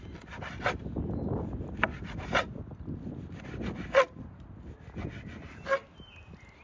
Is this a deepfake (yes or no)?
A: no